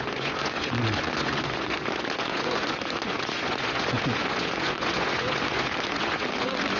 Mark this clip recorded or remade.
remade